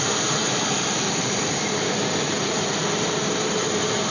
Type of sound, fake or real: fake